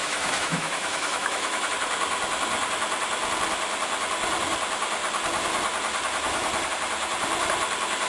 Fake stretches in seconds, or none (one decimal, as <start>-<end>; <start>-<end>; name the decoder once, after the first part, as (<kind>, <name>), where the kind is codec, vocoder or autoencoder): 0.0-1.7 (autoencoder, DAC-VAE)